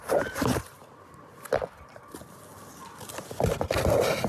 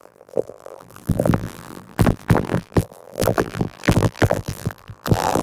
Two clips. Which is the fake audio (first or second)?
second